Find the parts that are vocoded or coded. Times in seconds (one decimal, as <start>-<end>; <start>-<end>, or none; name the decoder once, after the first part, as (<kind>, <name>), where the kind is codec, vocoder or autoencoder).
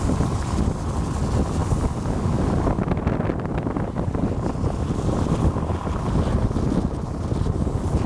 none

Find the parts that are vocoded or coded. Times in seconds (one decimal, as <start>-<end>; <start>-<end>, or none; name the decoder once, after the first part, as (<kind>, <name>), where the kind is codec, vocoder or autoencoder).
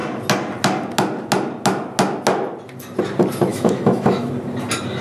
3.5-4.3 (autoencoder, DAC-VAE)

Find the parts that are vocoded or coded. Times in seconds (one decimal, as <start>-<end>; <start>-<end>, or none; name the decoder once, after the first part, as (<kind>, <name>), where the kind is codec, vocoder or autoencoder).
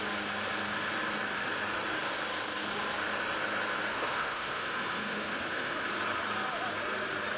3.9-5.9 (autoencoder, DAC-VAE)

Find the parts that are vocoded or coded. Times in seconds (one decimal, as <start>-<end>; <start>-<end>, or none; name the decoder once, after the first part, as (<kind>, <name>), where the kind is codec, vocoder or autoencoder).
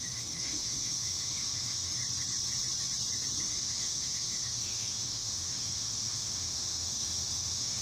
0.0-2.0 (autoencoder, DAC-VAE); 3.4-7.8